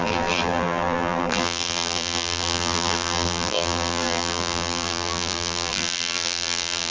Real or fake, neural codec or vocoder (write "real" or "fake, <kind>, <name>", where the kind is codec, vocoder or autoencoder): fake, vocoder, BigVGAN v2